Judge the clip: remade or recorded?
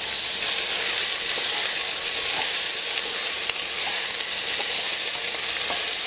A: recorded